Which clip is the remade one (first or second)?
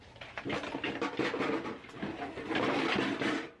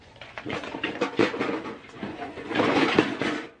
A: second